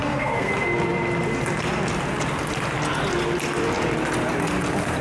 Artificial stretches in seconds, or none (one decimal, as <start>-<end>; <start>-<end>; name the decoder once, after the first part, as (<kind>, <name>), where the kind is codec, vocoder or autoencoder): 0.0-0.5 (codec, SNAC)